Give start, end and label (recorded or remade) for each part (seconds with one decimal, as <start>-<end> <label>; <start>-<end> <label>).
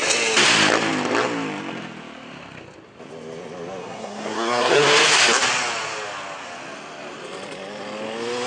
0.0-3.8 recorded; 3.8-4.8 remade; 4.8-8.5 recorded